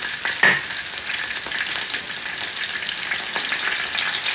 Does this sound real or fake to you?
real